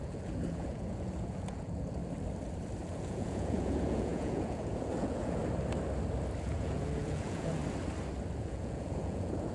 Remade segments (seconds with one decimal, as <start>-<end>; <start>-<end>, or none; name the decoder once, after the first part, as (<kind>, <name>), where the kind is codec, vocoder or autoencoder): 0.0-2.0 (vocoder, Vocos); 2.8-5.4; 6.4-7.6; 8.4-9.5